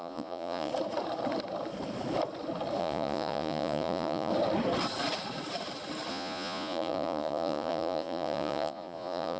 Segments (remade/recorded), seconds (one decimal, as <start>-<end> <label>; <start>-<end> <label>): 0.0-0.7 remade; 0.7-2.8 recorded; 2.8-4.3 remade; 4.3-6.1 recorded; 6.1-9.4 remade